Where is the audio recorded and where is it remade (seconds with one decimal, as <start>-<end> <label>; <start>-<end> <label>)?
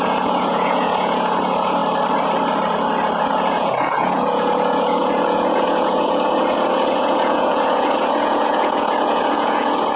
0.0-1.8 remade; 1.8-3.2 recorded; 3.2-10.0 remade